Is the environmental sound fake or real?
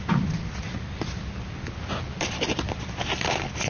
real